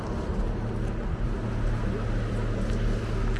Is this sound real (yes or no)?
yes